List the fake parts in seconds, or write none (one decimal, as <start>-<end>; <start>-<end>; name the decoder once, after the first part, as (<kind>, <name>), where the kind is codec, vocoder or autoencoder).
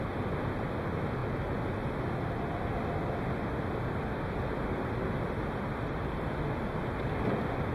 none